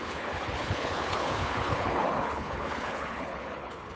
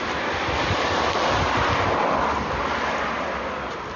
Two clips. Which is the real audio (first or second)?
second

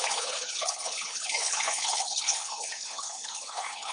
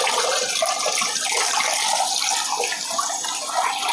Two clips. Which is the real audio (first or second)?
second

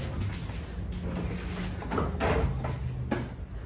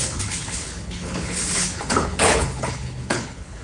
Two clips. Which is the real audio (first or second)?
first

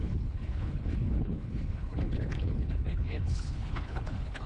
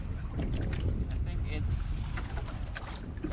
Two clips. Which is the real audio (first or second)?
second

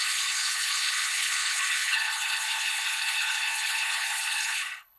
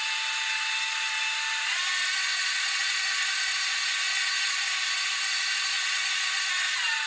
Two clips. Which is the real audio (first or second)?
second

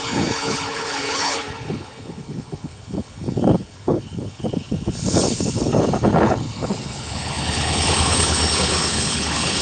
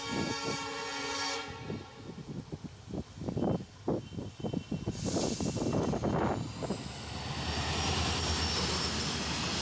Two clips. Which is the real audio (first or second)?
second